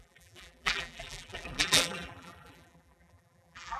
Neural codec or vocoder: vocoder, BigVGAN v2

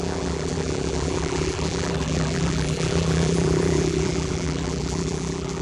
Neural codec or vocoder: vocoder, BigVGAN v2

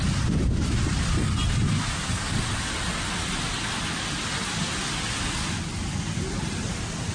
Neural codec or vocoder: none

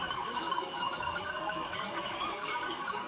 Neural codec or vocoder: codec, DAC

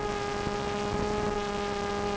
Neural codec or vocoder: none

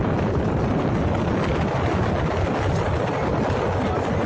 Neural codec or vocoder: none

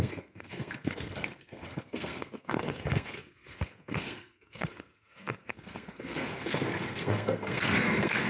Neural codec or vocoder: codec, SNAC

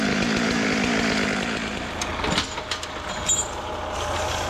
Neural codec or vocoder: none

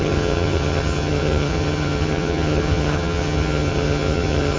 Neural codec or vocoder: vocoder, HiFi-GAN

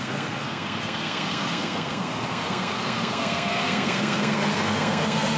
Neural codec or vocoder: codec, SNAC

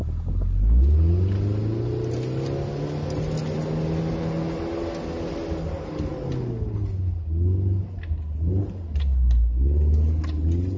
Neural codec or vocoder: none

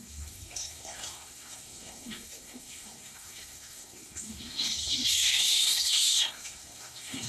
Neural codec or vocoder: codec, SNAC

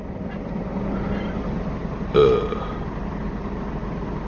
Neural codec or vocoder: none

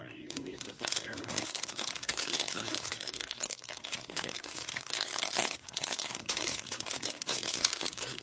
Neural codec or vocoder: codec, SNAC